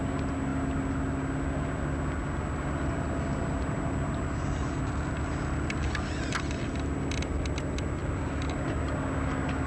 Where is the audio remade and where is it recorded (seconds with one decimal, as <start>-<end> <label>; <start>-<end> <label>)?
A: 0.0-9.7 recorded